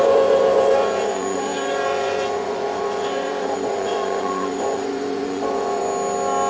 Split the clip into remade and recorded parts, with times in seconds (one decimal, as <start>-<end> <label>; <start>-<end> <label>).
0.0-5.8 remade; 5.8-6.5 recorded